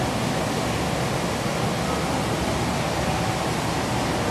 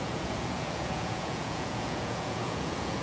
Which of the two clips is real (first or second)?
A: first